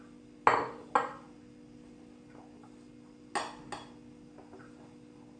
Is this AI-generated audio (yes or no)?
no